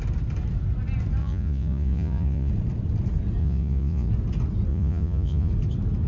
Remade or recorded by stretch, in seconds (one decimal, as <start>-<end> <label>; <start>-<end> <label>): 0.0-1.2 recorded; 1.2-2.5 remade; 2.5-3.4 recorded; 3.4-4.1 remade; 4.1-4.7 recorded; 4.7-5.5 remade; 5.5-6.1 recorded